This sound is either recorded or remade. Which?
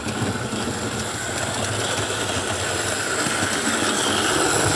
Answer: recorded